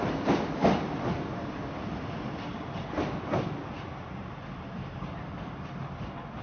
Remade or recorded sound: remade